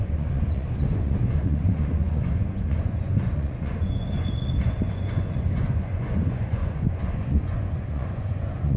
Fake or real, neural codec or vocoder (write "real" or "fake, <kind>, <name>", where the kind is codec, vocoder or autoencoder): fake, vocoder, Vocos